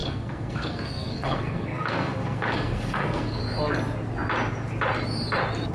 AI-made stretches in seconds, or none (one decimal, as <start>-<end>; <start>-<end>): 0.0-3.4